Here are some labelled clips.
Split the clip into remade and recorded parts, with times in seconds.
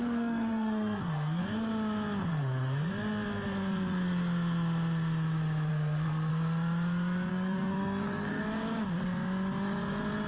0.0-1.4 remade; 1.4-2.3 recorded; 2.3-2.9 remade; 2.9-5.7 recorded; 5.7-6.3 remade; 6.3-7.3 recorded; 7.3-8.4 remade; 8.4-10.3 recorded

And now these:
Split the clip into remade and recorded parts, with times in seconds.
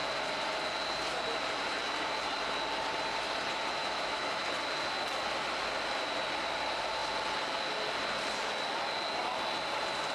0.0-3.8 recorded; 3.8-4.4 remade; 4.4-10.1 recorded